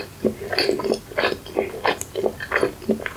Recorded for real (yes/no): yes